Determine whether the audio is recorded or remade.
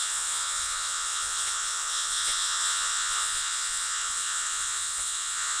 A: remade